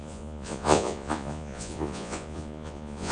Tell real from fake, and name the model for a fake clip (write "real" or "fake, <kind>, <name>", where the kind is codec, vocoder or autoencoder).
fake, vocoder, Vocos